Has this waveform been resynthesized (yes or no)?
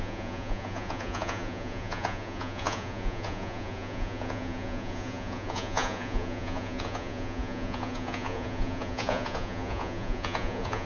yes